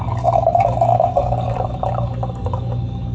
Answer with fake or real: fake